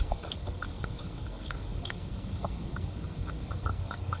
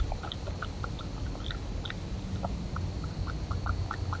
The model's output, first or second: first